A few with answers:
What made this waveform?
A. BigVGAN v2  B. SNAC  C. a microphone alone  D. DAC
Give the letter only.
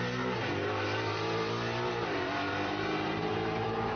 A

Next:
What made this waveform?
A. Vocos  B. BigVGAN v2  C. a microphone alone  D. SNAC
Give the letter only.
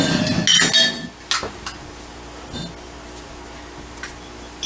C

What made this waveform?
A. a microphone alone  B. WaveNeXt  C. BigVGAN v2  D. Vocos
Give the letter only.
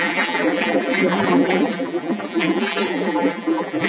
C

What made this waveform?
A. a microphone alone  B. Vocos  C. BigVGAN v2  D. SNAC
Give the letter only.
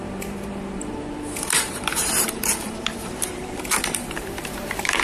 C